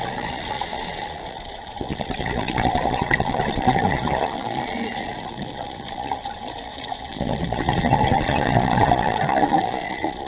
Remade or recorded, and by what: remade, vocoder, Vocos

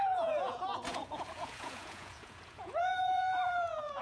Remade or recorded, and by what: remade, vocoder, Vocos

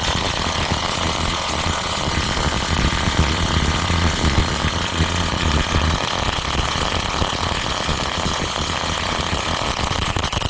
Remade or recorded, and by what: remade, vocoder, Vocos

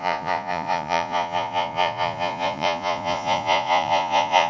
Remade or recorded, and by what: remade, vocoder, Vocos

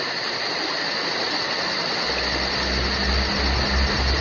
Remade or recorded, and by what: recorded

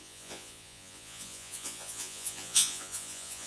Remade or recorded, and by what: remade, vocoder, Vocos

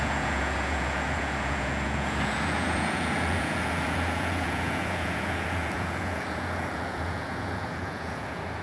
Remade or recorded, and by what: remade, vocoder, Vocos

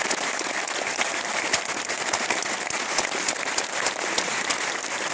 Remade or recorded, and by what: recorded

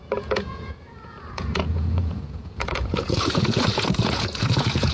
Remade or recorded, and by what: remade, vocoder, Vocos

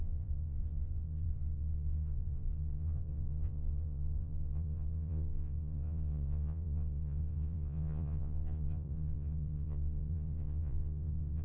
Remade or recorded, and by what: remade, vocoder, Vocos